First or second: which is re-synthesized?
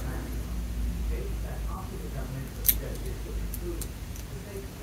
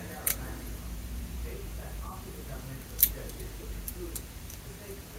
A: second